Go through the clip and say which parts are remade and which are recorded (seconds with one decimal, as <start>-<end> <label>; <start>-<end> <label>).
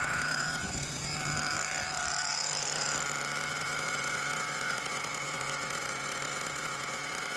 0.0-1.1 remade; 1.1-3.5 recorded; 3.5-7.4 remade